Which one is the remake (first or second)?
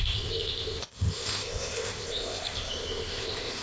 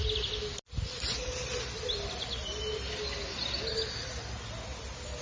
first